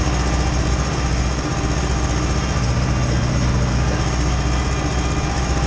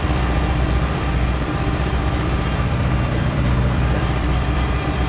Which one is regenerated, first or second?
second